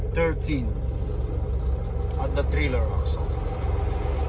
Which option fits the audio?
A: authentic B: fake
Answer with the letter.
A